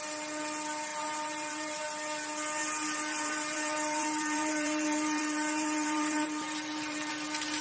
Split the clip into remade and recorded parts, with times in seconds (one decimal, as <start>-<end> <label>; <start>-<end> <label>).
0.0-0.9 recorded; 0.9-1.8 remade; 1.8-2.6 recorded; 2.6-7.1 remade; 7.1-7.6 recorded